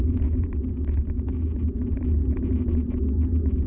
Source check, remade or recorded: recorded